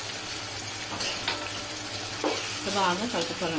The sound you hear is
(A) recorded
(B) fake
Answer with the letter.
A